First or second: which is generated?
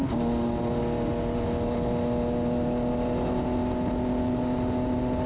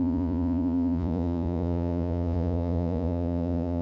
second